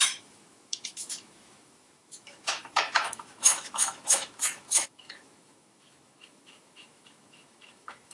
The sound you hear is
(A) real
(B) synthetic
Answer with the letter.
B